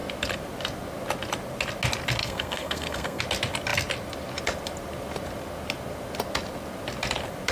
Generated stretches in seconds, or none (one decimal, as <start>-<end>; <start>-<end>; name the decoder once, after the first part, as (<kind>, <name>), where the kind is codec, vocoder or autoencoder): 2.2-3.2 (codec, SNAC)